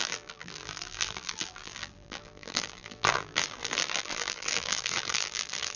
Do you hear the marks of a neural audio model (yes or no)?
yes